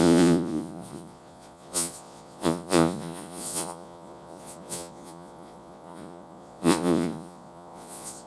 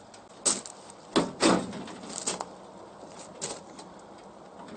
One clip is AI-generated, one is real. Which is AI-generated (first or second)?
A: first